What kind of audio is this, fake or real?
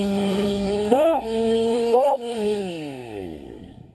fake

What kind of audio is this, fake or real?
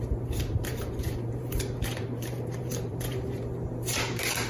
fake